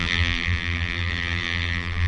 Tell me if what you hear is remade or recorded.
remade